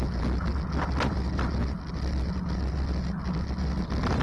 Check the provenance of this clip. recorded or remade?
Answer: recorded